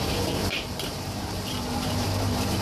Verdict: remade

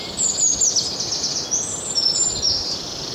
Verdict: recorded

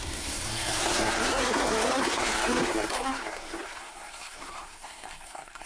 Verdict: remade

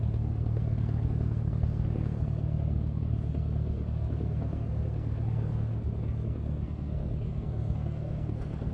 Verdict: remade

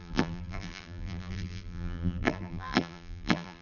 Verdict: remade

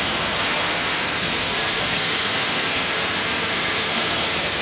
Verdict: remade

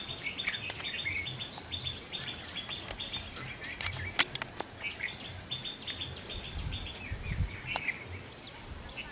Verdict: recorded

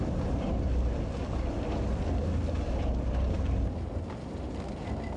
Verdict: recorded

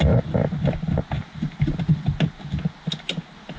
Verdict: recorded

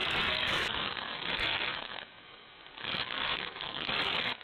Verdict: remade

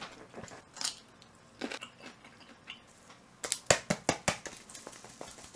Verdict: recorded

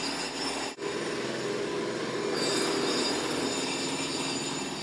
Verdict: recorded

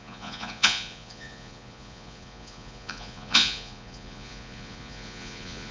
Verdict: remade